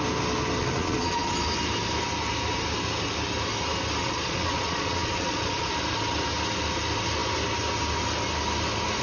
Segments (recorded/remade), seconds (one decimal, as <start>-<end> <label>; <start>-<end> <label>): 0.0-0.6 recorded; 0.6-1.3 remade; 1.3-4.0 recorded; 4.0-5.7 remade; 5.7-9.0 recorded